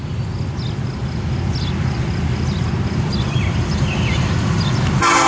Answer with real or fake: real